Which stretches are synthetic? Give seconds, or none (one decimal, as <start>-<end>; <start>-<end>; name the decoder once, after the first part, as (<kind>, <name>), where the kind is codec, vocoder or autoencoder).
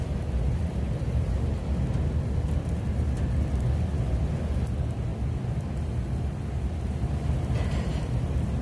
none